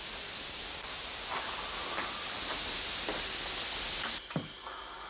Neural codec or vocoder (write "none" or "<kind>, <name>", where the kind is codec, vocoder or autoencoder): none